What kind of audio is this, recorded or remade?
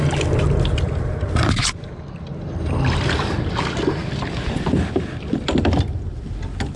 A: recorded